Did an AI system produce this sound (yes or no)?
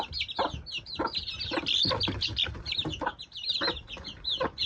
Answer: no